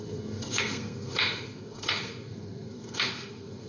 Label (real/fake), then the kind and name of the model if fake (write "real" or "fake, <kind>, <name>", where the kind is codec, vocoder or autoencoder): fake, codec, SNAC